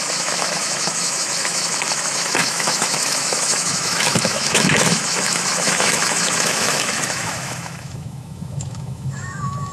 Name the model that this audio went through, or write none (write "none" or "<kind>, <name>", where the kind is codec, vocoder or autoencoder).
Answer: autoencoder, DAC-VAE